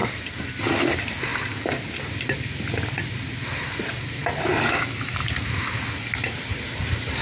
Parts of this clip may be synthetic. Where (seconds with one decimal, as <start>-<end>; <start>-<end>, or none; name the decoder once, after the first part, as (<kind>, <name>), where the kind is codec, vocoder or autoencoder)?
none